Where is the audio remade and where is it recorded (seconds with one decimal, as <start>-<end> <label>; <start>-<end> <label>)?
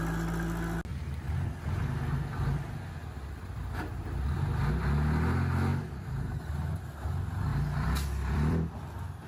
0.0-0.9 recorded; 0.9-1.7 remade; 1.7-3.0 recorded; 3.0-4.4 remade; 4.4-5.7 recorded; 5.7-6.4 remade; 6.4-7.5 recorded; 7.5-8.7 remade; 8.7-9.3 recorded